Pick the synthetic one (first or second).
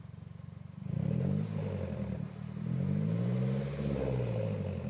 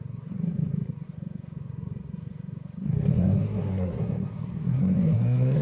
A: second